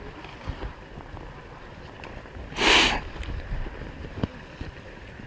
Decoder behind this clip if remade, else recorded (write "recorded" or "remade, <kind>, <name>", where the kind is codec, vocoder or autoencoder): recorded